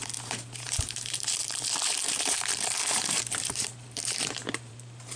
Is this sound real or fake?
fake